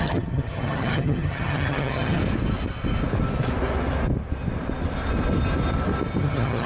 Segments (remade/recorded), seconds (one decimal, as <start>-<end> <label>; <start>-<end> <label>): 0.0-2.2 remade; 2.2-6.2 recorded; 6.2-6.7 remade